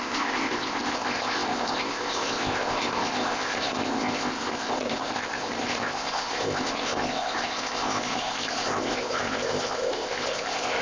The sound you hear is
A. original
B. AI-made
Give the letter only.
B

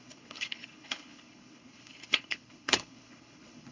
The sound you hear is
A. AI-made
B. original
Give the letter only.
A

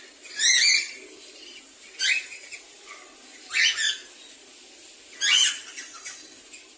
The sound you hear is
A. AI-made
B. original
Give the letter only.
B